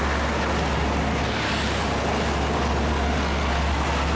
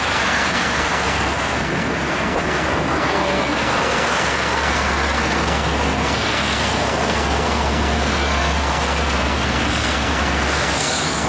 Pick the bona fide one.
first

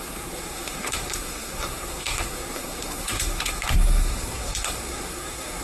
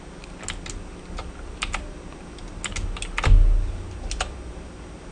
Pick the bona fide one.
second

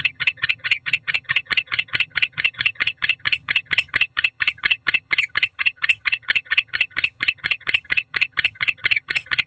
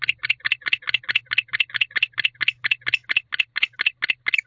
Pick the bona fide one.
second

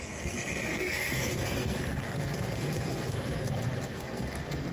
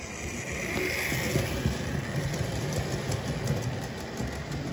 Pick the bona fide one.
second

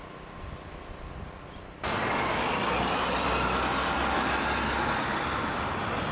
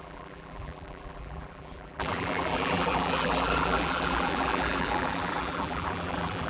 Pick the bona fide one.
first